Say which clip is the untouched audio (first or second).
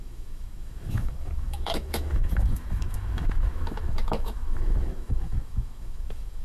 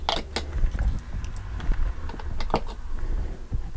second